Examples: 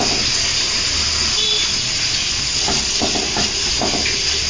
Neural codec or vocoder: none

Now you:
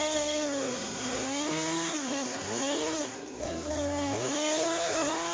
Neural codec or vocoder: codec, SNAC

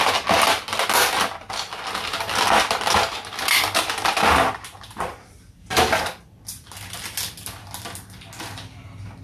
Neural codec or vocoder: none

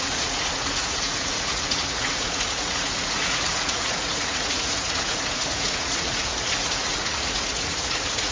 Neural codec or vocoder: vocoder, Vocos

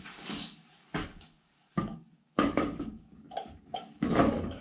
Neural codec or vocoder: codec, DAC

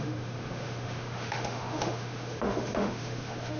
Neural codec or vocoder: autoencoder, DAC-VAE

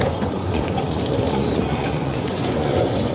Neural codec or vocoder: vocoder, Vocos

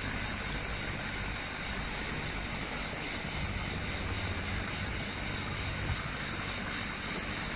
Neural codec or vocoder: none